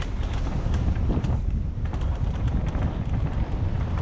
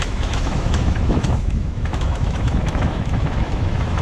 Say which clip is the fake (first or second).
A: second